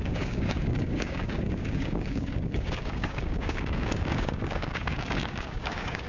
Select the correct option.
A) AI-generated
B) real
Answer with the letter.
A